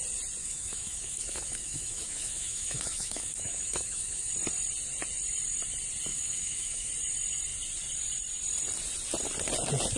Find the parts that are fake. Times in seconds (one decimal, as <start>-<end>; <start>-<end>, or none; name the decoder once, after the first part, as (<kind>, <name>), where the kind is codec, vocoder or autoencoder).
0.4-4.3 (autoencoder, DAC-VAE); 6.1-6.9